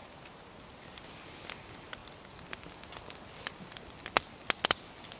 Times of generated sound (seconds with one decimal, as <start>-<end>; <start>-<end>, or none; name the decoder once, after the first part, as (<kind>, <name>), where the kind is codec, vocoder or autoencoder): none